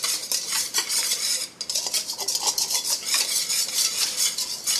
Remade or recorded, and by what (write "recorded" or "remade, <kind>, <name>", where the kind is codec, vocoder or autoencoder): recorded